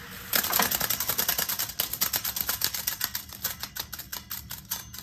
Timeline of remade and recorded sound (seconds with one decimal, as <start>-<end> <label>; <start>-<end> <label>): 0.0-5.0 recorded